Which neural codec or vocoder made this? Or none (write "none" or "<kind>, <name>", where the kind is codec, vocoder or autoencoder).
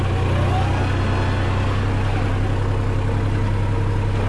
none